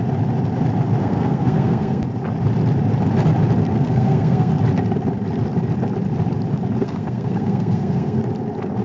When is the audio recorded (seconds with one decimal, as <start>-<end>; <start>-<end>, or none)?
0.0-1.0; 2.0-3.7; 4.5-6.8; 8.2-8.8